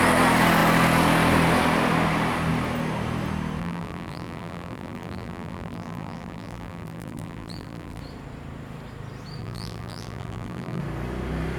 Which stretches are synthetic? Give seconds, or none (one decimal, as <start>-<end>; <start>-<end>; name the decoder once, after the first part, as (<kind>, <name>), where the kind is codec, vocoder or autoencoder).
3.6-8.0 (vocoder, BigVGAN v2); 9.4-10.8

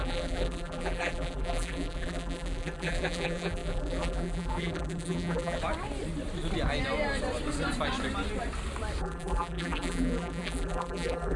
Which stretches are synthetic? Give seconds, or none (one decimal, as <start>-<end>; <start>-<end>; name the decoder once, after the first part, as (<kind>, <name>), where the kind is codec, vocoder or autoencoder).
0.0-5.6 (vocoder, BigVGAN v2); 9.0-11.4

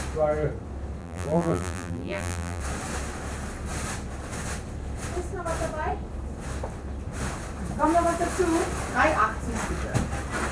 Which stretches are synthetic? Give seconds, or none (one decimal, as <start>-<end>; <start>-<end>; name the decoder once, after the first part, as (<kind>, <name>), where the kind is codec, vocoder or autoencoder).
1.0-2.6 (vocoder, BigVGAN v2)

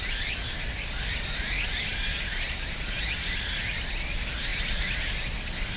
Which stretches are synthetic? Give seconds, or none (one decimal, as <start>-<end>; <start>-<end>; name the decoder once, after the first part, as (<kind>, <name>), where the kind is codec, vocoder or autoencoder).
none

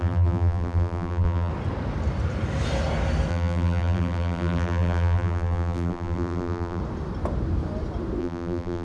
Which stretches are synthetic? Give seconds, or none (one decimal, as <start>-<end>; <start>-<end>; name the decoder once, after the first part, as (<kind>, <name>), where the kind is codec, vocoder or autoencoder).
0.0-1.5 (vocoder, BigVGAN v2); 3.3-6.8; 8.2-8.8

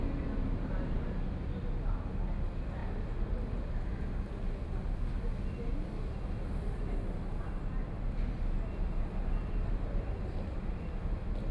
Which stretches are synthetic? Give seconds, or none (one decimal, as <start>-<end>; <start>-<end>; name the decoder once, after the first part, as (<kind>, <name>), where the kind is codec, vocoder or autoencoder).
none

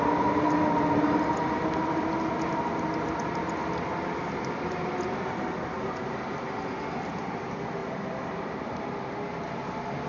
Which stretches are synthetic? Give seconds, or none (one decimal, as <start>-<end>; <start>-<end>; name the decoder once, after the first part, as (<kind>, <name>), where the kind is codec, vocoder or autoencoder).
7.8-9.1 (vocoder, BigVGAN v2)